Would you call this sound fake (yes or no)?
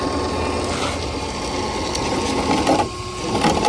no